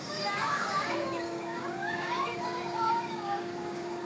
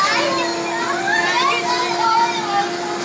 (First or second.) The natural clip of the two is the second